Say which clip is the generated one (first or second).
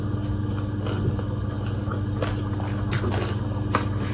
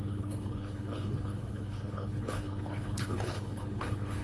second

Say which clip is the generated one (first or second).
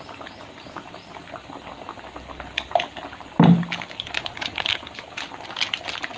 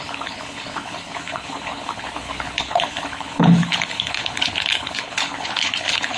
second